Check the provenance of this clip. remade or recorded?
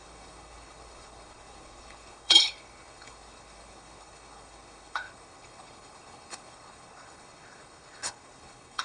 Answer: remade